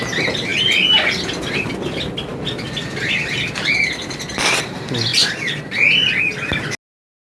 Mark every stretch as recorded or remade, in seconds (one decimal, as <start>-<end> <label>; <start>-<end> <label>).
0.0-0.5 recorded; 0.5-1.7 remade; 1.7-2.3 recorded; 2.3-4.2 remade; 4.2-5.1 recorded; 5.1-6.2 remade; 6.2-7.3 recorded